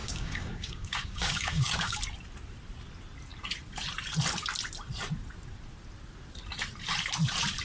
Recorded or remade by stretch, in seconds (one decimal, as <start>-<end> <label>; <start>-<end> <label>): 0.0-2.0 remade; 2.0-7.6 recorded